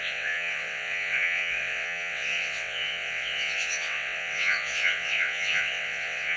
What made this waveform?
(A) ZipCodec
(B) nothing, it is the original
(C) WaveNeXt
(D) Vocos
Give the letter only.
C